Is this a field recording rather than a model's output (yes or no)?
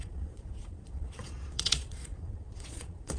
no